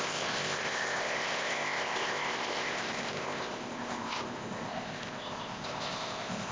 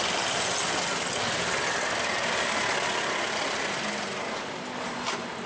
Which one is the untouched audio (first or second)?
second